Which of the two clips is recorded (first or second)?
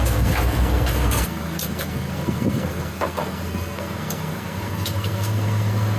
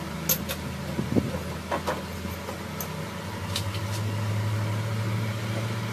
second